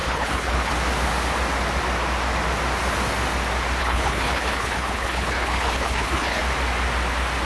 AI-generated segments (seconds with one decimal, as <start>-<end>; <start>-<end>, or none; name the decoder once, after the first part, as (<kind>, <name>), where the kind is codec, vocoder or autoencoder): 0.0-0.7 (codec, HILCodec); 3.8-6.4